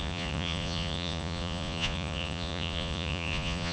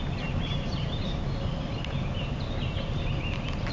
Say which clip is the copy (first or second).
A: first